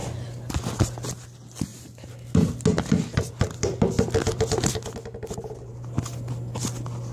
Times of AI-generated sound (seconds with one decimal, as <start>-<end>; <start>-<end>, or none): none